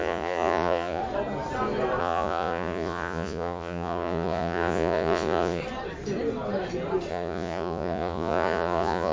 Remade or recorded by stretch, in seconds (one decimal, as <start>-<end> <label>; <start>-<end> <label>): 0.0-1.0 remade; 1.0-2.0 recorded; 2.0-5.6 remade; 5.6-7.1 recorded; 7.1-9.1 remade